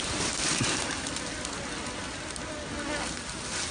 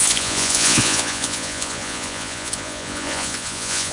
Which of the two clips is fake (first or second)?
second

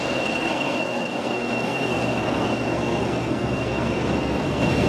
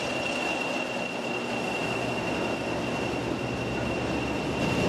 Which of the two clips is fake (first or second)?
first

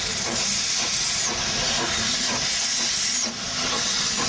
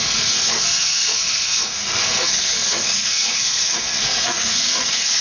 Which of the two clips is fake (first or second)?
second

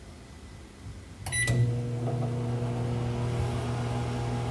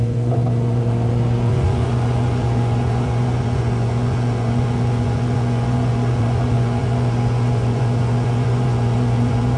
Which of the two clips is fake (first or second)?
second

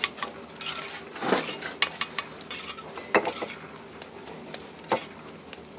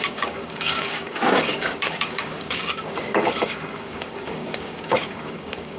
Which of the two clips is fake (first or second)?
second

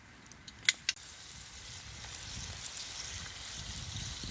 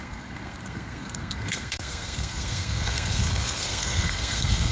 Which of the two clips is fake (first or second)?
second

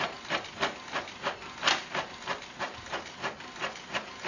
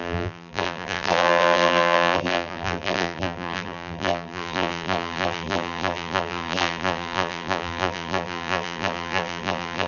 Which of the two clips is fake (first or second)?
second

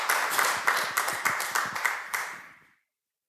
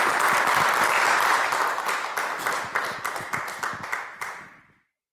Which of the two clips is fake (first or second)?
first